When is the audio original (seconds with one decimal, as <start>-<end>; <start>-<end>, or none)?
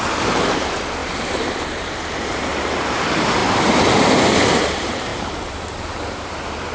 3.4-4.6